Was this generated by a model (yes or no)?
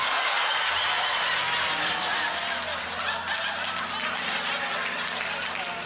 no